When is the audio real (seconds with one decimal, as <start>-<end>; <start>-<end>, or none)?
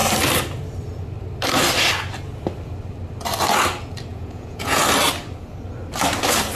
0.0-4.1; 4.8-6.6